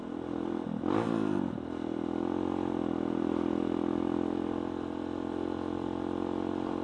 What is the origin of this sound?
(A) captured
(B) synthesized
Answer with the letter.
A